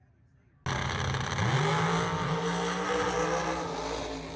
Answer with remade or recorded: recorded